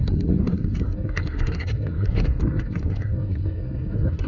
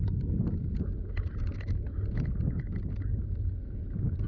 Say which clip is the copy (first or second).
first